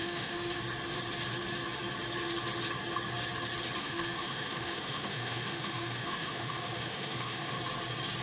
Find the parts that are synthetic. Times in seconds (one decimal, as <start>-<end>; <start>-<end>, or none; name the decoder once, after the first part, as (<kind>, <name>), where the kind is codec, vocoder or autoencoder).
0.0-0.6 (autoencoder, DAC-VAE); 3.8-7.6